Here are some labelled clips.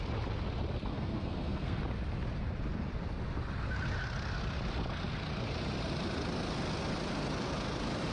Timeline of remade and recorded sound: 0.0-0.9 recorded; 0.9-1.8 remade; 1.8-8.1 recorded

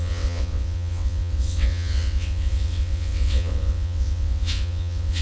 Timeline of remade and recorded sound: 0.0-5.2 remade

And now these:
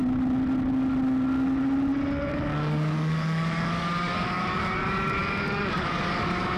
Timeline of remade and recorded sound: 0.0-2.2 recorded; 2.2-6.6 remade